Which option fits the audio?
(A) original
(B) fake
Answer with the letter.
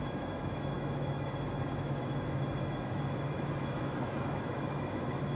B